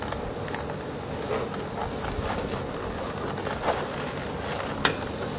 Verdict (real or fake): real